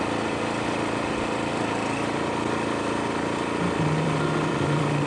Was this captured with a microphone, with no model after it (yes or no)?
no